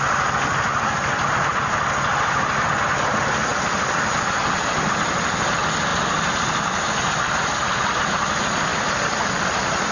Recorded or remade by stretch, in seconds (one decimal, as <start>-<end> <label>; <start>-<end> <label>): 0.0-9.9 recorded